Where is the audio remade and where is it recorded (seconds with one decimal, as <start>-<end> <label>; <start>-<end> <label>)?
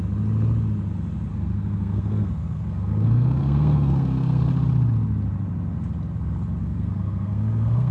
0.0-1.3 recorded; 1.3-4.5 remade; 4.5-6.6 recorded; 6.6-7.9 remade